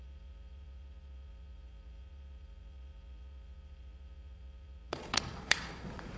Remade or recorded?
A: remade